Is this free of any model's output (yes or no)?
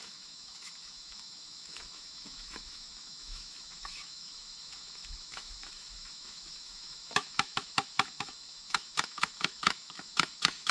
no